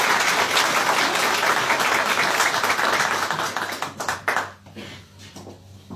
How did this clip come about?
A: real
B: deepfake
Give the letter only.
A